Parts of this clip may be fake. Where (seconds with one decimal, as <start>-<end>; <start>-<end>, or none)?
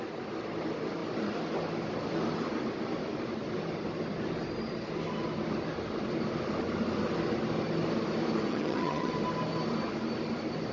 8.5-9.1